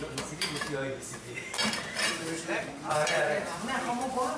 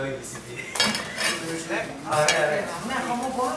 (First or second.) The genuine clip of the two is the second